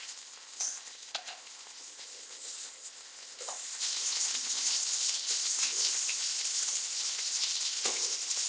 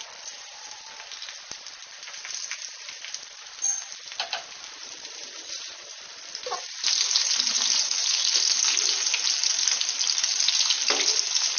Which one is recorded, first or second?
second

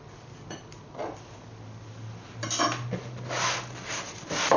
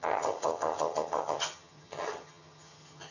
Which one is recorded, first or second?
first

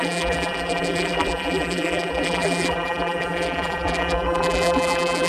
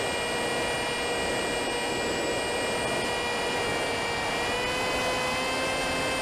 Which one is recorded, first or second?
second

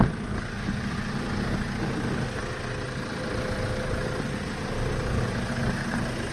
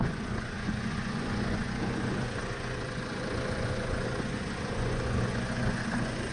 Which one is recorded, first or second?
first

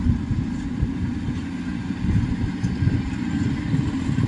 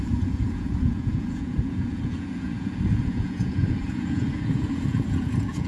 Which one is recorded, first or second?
first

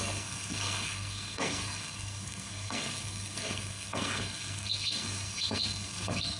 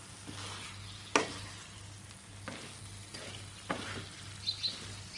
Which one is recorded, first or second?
second